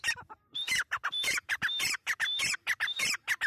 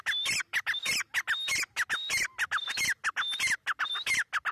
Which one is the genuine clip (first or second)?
second